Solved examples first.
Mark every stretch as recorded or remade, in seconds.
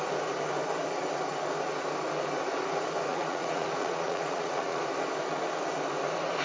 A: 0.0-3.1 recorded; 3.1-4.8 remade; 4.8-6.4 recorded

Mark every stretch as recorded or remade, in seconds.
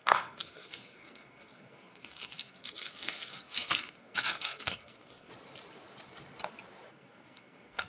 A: 0.0-5.3 remade; 5.3-6.9 recorded; 6.9-7.9 remade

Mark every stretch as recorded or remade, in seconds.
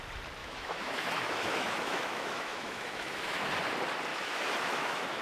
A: 0.0-0.4 recorded; 0.4-3.5 remade; 3.5-4.1 recorded; 4.1-5.2 remade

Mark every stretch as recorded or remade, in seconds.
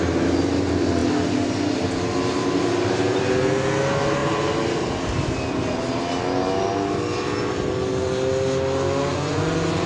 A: 0.0-9.1 recorded; 9.1-9.9 remade